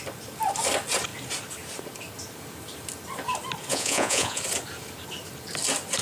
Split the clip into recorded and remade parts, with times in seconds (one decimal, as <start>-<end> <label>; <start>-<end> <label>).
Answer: 0.0-3.7 recorded; 3.7-4.4 remade; 4.4-6.0 recorded